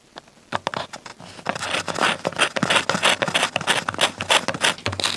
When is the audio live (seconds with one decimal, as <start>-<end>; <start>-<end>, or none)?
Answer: 0.0-5.2